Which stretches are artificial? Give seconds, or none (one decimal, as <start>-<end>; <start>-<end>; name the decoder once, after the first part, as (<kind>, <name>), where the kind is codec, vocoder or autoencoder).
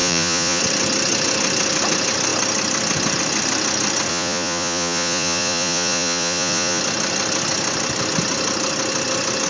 0.0-0.6 (vocoder, Vocos); 4.1-6.8